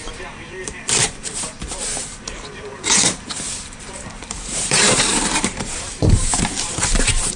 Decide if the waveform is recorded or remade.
remade